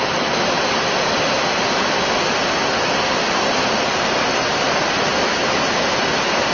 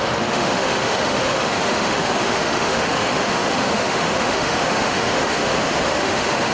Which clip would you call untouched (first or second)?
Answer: first